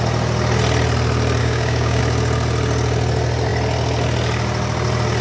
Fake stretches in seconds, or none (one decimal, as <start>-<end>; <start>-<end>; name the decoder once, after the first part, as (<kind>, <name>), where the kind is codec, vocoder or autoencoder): 1.4-2.0 (codec, DAC)